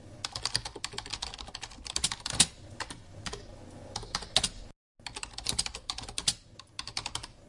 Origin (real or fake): real